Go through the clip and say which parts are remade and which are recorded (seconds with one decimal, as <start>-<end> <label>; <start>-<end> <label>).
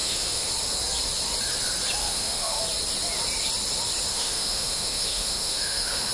0.0-0.5 remade; 0.5-2.0 recorded; 2.0-2.6 remade; 2.6-4.1 recorded; 4.1-6.1 remade